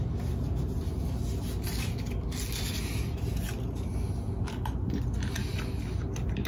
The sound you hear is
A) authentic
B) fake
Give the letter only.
A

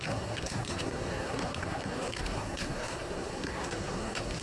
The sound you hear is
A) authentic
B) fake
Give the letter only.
B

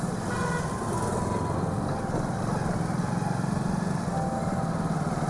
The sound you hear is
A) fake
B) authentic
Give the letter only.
B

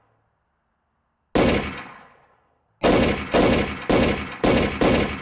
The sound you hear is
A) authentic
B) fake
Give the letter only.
A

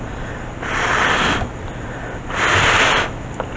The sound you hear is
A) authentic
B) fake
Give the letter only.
A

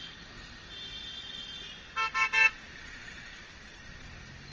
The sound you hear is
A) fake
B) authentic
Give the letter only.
B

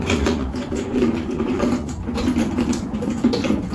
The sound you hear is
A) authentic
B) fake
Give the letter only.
B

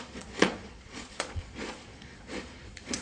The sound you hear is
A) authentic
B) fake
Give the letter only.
B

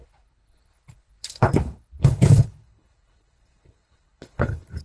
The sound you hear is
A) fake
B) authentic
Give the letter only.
A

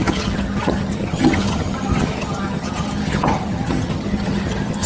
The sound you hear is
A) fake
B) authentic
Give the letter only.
A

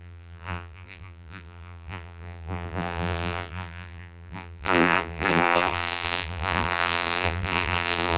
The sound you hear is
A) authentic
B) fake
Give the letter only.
B